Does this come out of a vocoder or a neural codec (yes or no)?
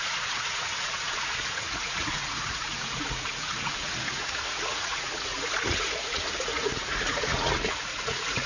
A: yes